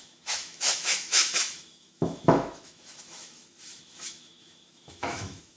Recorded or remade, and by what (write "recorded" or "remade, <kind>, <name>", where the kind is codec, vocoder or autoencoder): remade, autoencoder, DAC-VAE